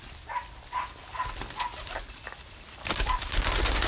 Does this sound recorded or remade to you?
recorded